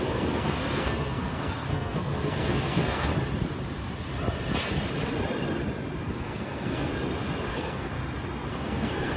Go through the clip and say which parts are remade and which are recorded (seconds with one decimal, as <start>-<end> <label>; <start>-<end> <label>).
0.0-3.1 remade; 3.1-6.1 recorded; 6.1-6.9 remade; 6.9-7.5 recorded; 7.5-7.9 remade; 7.9-8.5 recorded; 8.5-9.2 remade